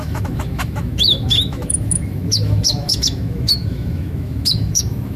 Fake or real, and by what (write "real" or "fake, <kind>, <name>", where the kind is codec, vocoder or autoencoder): fake, autoencoder, DAC-VAE